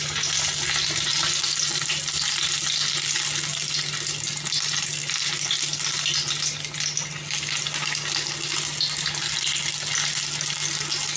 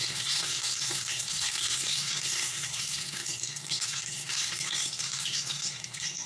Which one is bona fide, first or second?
first